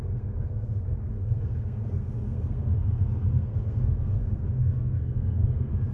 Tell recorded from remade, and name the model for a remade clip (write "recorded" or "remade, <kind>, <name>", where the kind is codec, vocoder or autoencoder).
remade, codec, SNAC